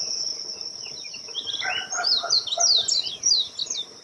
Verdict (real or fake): real